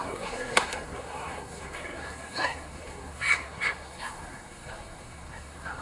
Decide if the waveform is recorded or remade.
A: remade